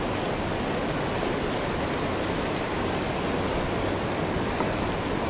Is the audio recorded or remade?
recorded